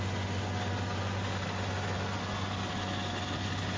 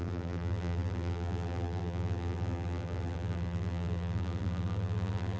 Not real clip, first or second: second